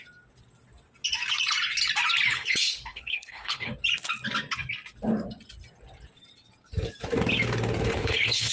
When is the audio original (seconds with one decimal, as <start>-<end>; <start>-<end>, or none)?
0.0-2.3; 3.7-7.9